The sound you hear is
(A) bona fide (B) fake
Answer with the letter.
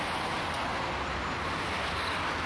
A